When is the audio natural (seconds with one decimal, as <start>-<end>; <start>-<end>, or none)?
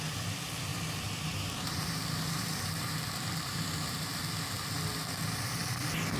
0.0-0.7; 4.2-6.2